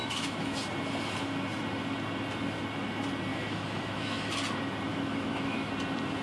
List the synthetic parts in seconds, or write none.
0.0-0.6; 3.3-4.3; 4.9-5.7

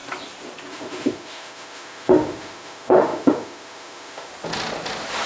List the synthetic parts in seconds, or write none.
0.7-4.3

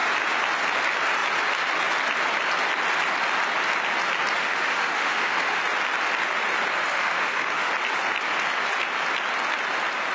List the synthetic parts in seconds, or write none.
4.4-5.6; 6.9-7.7